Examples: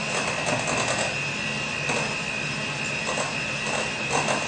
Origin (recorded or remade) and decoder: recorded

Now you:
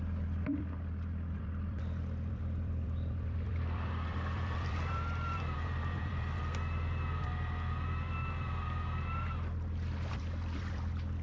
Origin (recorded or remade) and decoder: remade, vocoder, BigVGAN v2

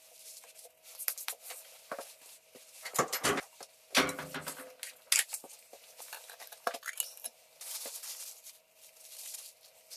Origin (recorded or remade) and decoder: recorded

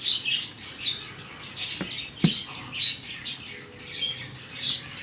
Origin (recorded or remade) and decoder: recorded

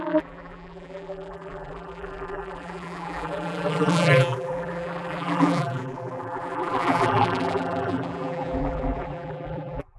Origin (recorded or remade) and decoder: remade, vocoder, BigVGAN v2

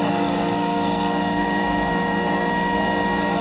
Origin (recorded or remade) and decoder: remade, codec, SNAC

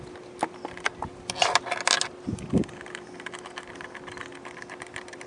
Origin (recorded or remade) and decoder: recorded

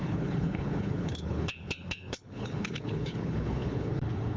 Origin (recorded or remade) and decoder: remade, codec, HILCodec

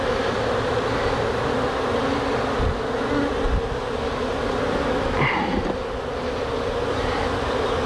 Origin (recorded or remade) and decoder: recorded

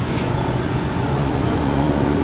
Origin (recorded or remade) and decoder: remade, vocoder, Vocos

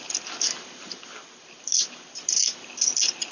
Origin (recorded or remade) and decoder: recorded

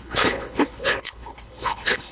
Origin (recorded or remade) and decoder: remade, codec, HILCodec